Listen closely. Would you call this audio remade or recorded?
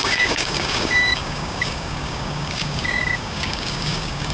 remade